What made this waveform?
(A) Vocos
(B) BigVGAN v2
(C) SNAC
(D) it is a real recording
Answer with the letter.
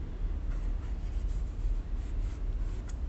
D